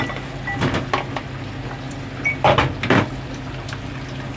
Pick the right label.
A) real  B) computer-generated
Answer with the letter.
A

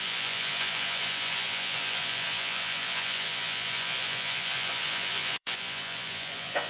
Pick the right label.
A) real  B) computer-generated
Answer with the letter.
B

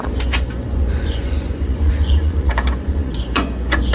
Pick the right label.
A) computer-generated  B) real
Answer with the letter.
A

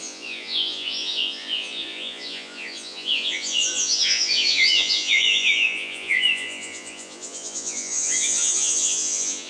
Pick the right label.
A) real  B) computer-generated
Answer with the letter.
B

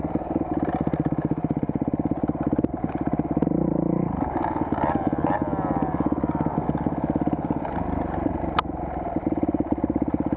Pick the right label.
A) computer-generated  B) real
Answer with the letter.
B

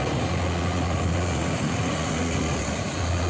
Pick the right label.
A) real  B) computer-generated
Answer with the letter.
B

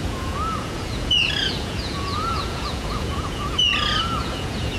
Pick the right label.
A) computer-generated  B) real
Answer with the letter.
A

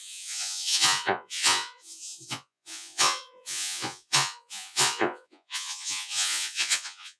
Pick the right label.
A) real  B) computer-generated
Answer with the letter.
B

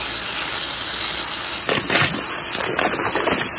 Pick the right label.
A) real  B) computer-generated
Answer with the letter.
A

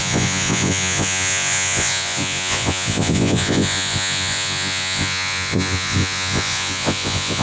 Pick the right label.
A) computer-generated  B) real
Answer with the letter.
A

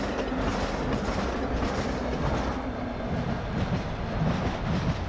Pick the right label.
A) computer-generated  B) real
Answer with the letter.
B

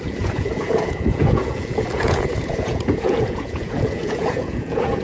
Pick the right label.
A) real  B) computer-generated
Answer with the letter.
B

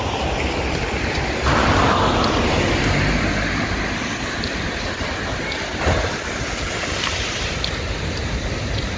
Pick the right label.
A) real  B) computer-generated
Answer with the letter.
A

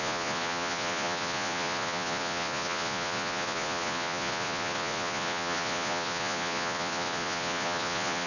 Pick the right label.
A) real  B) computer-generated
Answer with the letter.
B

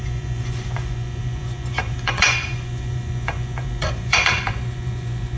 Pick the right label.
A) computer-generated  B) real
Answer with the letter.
A